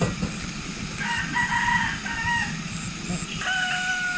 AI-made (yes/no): no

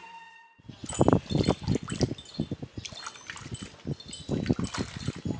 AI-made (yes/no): no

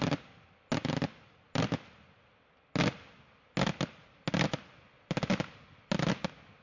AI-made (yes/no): no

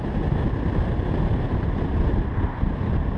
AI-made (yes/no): no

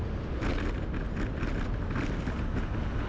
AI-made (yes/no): no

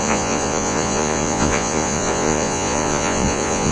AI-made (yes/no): yes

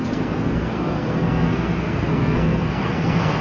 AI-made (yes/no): yes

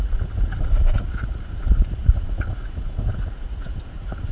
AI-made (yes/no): yes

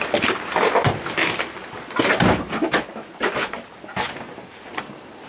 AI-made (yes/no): no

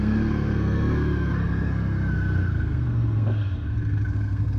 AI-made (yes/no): yes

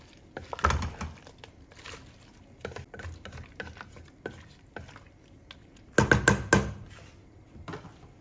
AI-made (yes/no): no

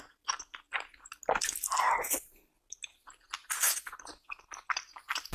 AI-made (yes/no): no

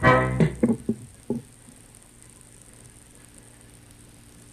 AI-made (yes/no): no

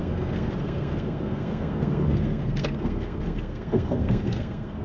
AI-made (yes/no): yes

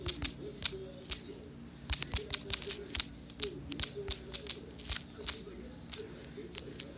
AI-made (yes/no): no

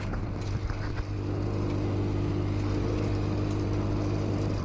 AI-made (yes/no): no